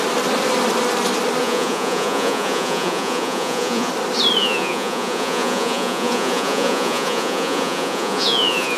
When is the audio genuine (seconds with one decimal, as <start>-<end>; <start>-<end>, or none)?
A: 0.0-1.4; 3.9-4.4